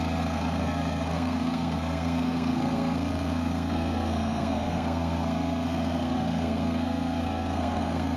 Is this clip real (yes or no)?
no